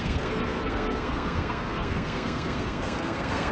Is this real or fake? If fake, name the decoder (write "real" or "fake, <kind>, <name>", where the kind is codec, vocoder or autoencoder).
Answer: fake, codec, SNAC